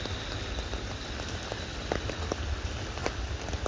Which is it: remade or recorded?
recorded